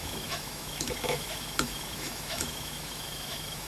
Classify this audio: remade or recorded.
remade